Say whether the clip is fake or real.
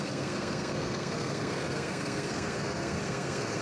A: fake